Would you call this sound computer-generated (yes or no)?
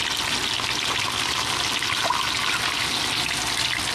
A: no